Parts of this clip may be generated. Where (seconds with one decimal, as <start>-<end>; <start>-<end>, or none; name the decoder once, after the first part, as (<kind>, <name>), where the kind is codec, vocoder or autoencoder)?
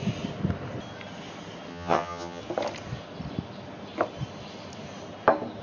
1.7-2.4 (vocoder, HiFi-GAN)